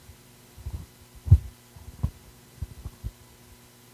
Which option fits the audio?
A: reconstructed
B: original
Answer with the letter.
B